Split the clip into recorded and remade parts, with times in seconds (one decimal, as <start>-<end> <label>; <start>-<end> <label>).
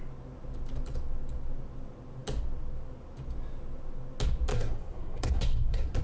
0.0-4.5 recorded; 4.5-6.0 remade